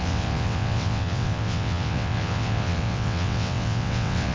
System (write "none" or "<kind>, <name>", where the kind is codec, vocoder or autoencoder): vocoder, WaveNeXt